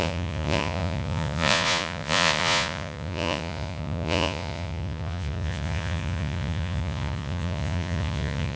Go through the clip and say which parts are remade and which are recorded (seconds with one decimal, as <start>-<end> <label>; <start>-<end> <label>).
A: 0.0-8.6 remade